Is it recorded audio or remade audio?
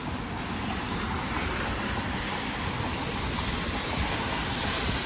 recorded